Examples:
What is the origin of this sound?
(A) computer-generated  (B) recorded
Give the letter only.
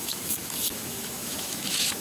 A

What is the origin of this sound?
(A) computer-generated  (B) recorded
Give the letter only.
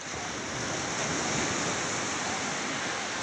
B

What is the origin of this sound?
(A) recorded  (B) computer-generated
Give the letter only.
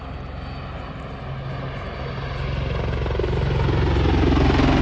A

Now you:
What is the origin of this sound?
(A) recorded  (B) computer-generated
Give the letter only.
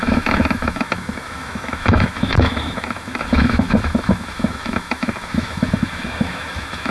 B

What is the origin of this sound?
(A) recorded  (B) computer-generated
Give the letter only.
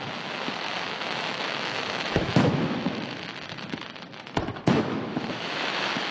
B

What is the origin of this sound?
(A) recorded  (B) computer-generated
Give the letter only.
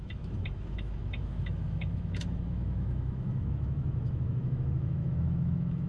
B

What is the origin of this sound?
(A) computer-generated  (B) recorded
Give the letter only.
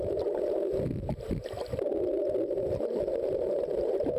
B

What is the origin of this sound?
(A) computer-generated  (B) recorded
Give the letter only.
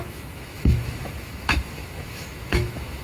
A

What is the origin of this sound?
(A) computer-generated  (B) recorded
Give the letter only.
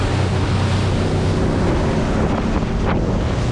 B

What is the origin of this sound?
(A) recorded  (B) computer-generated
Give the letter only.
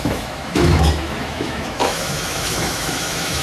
B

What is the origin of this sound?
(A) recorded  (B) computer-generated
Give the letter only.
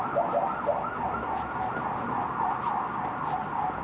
A